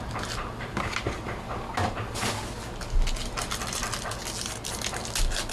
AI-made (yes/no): no